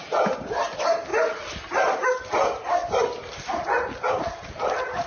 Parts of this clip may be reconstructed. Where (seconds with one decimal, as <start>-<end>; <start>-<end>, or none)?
none